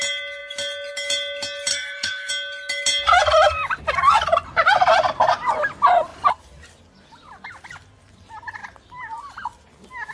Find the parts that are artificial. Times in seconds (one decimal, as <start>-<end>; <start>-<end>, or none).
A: 1.7-2.3